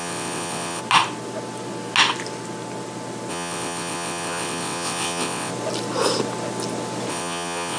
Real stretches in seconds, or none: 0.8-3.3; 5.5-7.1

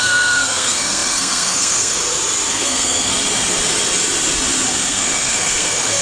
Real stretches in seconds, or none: 2.0-2.5; 3.1-4.7

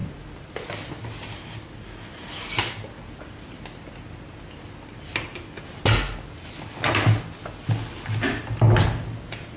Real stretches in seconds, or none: 0.0-9.6

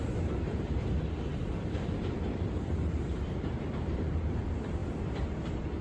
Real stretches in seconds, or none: 4.8-5.8